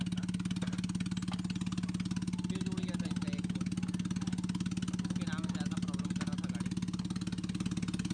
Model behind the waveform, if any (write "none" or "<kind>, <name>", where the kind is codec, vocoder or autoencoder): none